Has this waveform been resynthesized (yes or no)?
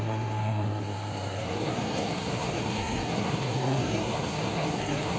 yes